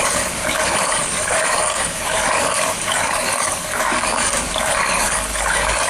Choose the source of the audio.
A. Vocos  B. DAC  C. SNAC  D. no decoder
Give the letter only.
B